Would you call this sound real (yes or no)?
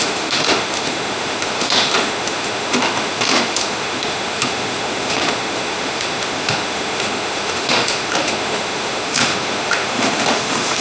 no